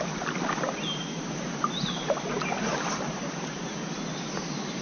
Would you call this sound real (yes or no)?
yes